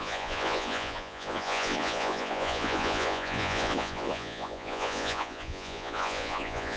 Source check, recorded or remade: remade